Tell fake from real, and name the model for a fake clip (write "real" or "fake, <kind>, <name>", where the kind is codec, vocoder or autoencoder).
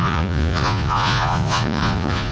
fake, vocoder, Vocos